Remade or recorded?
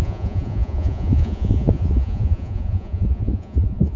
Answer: remade